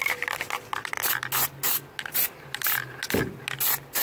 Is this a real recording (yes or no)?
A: yes